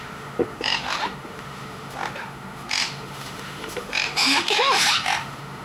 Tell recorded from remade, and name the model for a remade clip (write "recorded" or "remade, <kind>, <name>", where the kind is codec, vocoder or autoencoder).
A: remade, autoencoder, DAC-VAE